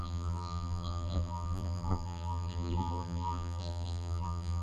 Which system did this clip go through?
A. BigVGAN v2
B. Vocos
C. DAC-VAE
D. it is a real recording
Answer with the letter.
A